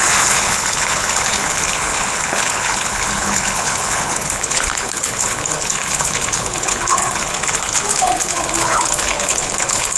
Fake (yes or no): yes